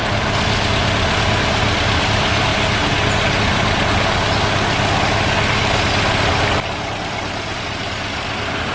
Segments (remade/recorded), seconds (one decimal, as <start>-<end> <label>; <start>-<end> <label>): 0.0-2.0 recorded; 2.0-2.5 remade; 2.5-7.0 recorded; 7.0-8.7 remade